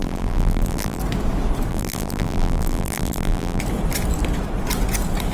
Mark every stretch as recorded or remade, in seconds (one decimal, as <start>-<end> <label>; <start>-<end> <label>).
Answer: 0.0-1.0 remade; 1.0-1.7 recorded; 1.7-3.6 remade; 3.6-5.3 recorded